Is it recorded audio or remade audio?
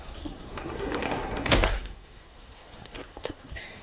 remade